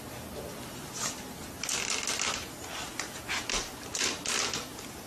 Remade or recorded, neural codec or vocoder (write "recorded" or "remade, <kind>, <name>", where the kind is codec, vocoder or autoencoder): recorded